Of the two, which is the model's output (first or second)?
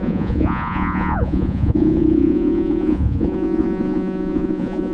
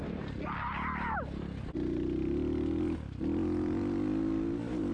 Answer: first